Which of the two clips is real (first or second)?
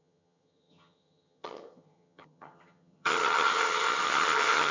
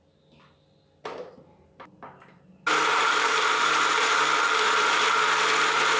second